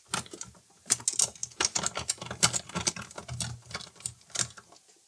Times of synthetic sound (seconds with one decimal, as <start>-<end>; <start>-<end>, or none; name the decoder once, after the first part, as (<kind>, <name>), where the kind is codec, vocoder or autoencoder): none